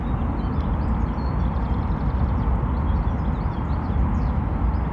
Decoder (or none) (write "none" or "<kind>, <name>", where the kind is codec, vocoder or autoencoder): none